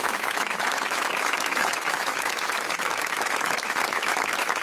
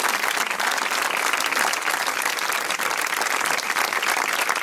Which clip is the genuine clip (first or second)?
second